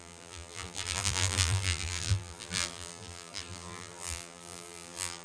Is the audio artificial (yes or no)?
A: yes